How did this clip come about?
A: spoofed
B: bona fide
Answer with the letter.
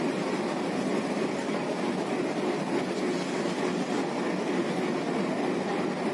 B